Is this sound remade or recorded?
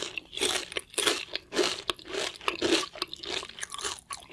recorded